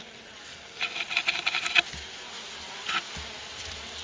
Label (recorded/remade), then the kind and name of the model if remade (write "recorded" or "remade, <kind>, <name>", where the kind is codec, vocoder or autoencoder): recorded